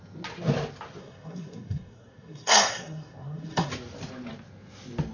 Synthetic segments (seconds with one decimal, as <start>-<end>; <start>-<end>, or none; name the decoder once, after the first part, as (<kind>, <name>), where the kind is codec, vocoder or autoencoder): 1.0-3.7 (codec, SNAC)

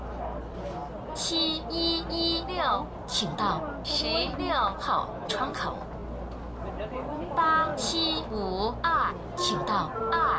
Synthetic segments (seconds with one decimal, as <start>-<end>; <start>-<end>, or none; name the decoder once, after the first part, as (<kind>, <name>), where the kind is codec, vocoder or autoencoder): none